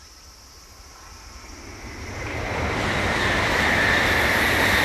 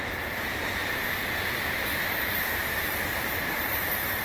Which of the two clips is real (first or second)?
first